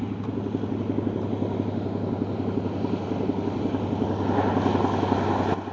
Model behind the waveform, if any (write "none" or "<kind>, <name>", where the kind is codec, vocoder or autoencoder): none